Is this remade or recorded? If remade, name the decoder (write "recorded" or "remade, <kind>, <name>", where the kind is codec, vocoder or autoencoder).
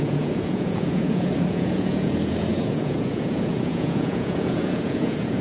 remade, vocoder, Vocos